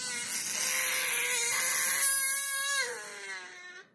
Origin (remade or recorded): recorded